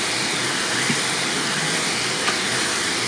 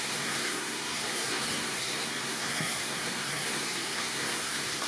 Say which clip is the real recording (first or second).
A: first